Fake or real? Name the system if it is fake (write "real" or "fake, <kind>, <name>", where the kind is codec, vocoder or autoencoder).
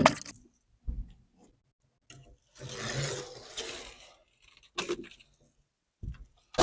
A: real